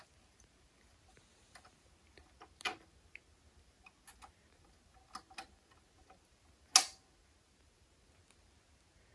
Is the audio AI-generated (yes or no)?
no